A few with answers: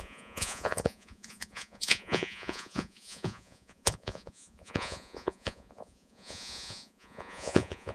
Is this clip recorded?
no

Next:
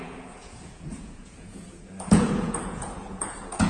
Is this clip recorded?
no